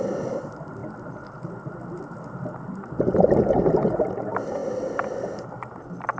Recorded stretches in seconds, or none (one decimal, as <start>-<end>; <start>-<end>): 0.0-6.2

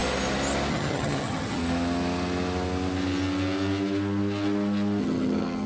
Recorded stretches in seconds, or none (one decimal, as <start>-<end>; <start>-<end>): 0.0-0.7; 1.6-5.0

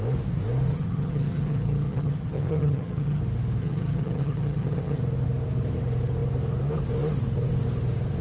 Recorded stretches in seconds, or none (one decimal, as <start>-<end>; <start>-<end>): 0.0-0.7; 3.2-3.6; 5.0-8.2

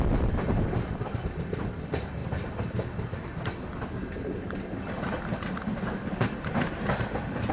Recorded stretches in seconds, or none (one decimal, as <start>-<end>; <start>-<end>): 0.0-7.5